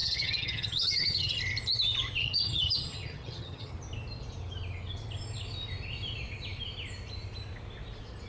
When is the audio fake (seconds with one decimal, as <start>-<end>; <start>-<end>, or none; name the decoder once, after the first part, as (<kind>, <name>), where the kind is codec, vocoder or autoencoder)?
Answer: 0.0-1.4 (vocoder, HiFi-GAN); 2.2-3.7